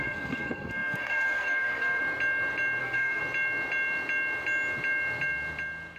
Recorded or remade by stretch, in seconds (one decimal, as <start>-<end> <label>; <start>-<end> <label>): 0.0-2.0 remade; 2.0-2.8 recorded; 2.8-3.2 remade; 3.2-6.0 recorded